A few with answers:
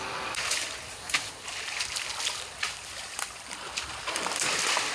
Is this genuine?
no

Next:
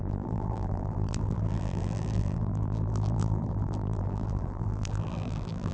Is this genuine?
no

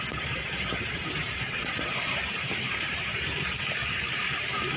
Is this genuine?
no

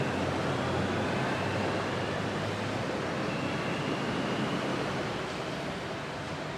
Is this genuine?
yes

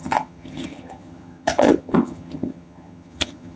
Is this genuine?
no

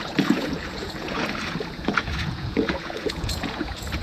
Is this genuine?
no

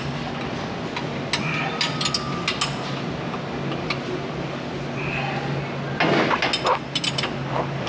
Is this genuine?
yes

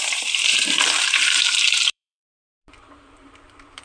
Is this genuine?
no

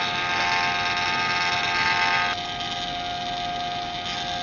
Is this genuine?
yes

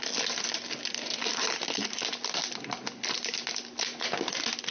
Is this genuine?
yes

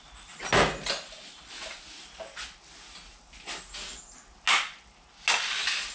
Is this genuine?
yes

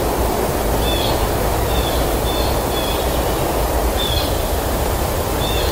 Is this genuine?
yes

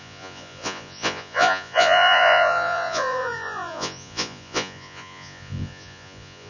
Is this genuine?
no